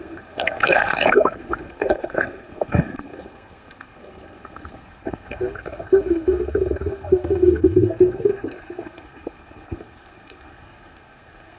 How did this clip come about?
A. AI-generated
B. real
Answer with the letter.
A